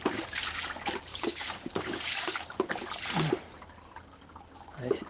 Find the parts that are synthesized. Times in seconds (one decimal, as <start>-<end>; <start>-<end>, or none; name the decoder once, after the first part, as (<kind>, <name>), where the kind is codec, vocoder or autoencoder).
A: 1.1-2.9 (codec, DAC)